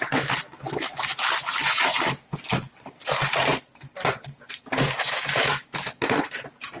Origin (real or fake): real